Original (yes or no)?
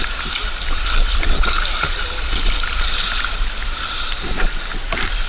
yes